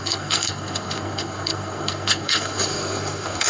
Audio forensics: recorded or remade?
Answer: remade